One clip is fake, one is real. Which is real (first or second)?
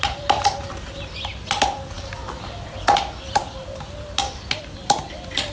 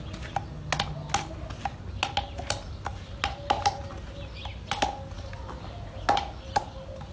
second